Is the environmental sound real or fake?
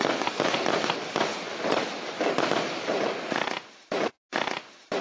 real